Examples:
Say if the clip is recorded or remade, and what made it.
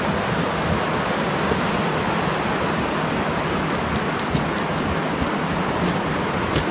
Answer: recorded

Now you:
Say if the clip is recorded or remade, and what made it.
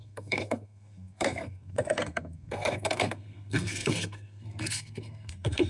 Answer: remade, codec, SNAC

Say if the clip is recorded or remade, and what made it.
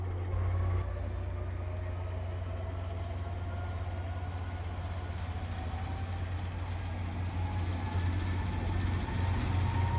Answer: recorded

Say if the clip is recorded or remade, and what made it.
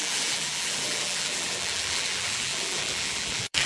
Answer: remade, vocoder, BigVGAN v2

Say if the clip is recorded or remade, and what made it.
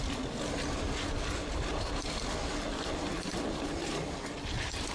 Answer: recorded